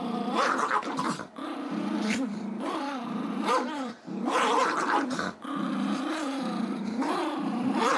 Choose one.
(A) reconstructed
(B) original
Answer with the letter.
A